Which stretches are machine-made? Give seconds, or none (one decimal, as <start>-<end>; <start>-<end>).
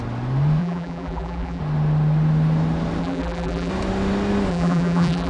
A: 0.6-1.6; 3.0-3.7; 4.5-5.3